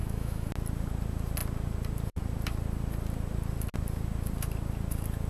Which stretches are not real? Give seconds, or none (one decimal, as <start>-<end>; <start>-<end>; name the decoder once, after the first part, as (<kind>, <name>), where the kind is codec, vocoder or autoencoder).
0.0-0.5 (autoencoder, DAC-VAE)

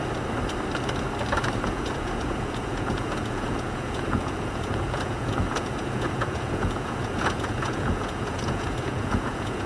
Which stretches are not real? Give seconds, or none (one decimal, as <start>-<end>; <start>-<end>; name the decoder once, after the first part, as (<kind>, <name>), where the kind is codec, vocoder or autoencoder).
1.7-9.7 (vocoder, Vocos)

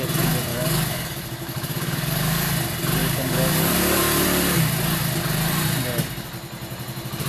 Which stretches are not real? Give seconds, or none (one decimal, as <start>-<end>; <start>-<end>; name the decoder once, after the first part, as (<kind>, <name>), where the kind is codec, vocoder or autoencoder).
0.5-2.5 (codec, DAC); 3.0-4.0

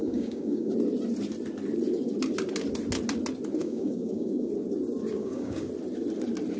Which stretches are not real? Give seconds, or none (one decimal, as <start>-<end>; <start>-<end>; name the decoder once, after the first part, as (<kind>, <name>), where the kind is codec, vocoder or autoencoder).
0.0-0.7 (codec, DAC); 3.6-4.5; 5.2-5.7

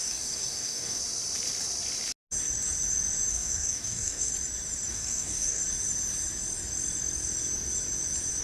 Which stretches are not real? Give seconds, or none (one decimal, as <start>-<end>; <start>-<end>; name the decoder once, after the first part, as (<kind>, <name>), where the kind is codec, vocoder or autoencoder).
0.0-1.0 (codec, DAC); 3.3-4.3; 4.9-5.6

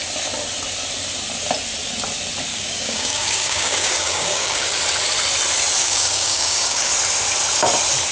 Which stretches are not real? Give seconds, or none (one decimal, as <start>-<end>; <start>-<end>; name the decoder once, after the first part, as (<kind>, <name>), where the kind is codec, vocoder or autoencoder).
2.5-4.8 (codec, DAC); 5.8-6.9